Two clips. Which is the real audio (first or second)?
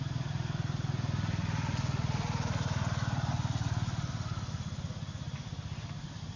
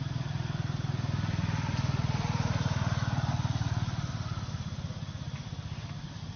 first